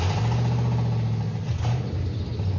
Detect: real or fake real